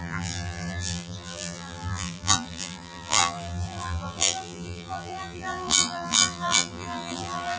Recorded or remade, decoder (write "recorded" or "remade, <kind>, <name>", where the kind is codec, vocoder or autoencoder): remade, vocoder, BigVGAN v2